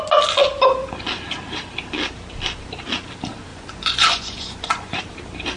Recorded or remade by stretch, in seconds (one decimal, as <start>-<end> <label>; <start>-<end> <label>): 0.0-3.5 recorded; 3.5-5.0 remade; 5.0-5.6 recorded